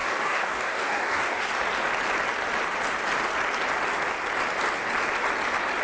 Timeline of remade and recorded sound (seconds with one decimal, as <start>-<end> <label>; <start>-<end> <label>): 0.0-1.5 remade; 1.5-5.8 recorded